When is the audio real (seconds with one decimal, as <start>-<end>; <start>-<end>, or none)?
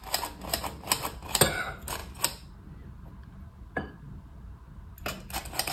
0.0-5.7